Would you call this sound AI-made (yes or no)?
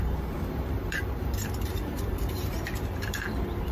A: yes